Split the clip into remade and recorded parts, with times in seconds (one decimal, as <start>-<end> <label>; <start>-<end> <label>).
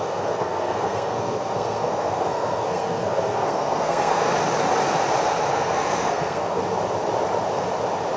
0.0-4.3 remade; 4.3-5.5 recorded; 5.5-6.6 remade; 6.6-8.2 recorded